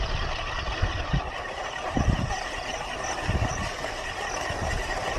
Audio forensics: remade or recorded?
recorded